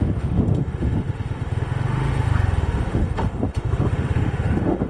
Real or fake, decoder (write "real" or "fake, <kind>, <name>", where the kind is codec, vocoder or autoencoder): fake, autoencoder, DAC-VAE